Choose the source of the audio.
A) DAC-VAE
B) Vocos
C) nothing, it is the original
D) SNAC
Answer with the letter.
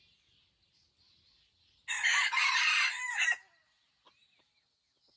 C